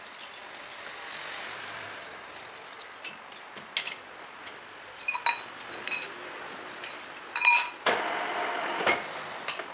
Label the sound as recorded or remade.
recorded